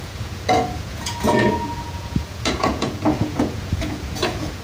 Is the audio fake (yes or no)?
yes